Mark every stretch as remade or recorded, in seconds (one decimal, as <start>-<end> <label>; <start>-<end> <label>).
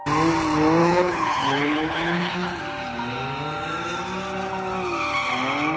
0.0-0.8 recorded; 0.8-2.6 remade; 2.6-5.8 recorded